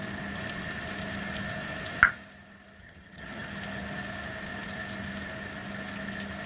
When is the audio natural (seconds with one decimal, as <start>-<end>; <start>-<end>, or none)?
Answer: 0.0-2.8; 3.5-6.5